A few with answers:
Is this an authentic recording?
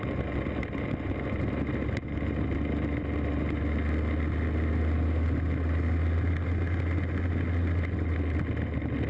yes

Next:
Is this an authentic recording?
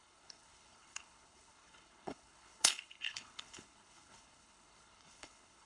no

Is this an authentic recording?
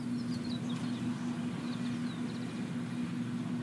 yes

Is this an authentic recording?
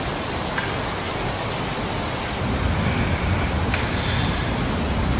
yes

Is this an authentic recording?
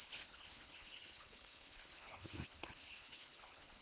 no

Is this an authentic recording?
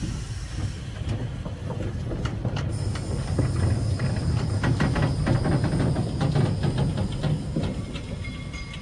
yes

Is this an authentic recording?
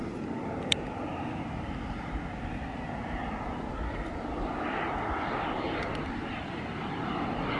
yes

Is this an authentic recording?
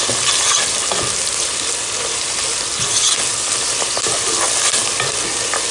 yes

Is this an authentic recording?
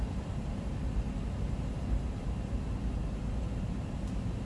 yes